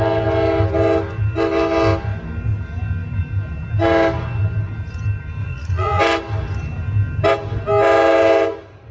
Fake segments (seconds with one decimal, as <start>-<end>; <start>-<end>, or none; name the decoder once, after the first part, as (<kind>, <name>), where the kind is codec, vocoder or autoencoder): 5.4-6.0 (vocoder, Vocos)